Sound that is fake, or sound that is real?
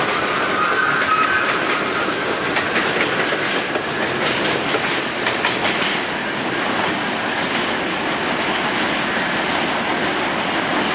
real